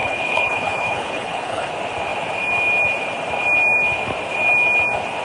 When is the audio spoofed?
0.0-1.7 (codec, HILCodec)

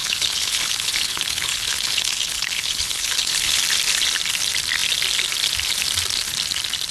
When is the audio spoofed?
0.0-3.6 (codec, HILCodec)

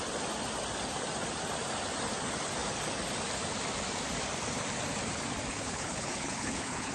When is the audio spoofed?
5.5-6.9 (codec, HILCodec)